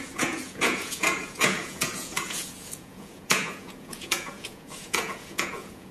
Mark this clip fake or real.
fake